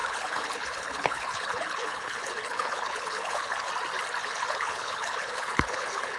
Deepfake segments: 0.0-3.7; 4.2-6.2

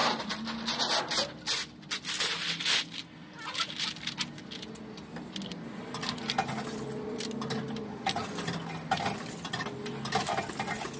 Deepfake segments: none

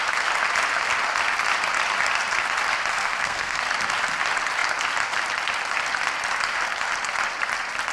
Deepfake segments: 2.9-3.6

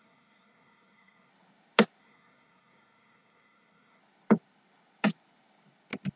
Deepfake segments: 0.0-1.3; 2.0-4.0